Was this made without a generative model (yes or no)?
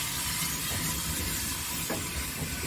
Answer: yes